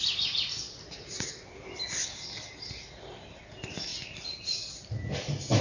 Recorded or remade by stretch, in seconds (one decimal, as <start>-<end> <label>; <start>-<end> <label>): 0.0-5.6 recorded